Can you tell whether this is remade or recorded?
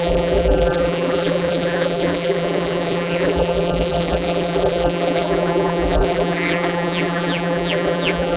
remade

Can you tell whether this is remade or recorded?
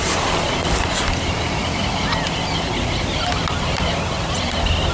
recorded